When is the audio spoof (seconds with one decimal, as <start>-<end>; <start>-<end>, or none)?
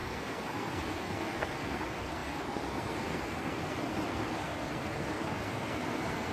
0.0-6.3